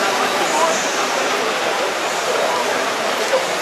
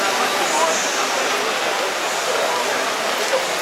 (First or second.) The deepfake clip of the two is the first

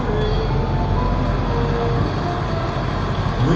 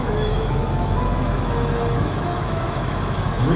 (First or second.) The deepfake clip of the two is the second